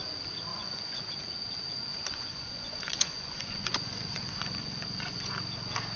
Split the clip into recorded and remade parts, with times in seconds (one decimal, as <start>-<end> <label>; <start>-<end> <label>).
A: 0.0-0.5 recorded; 0.5-1.1 remade; 1.1-1.9 recorded; 1.9-5.3 remade; 5.3-6.0 recorded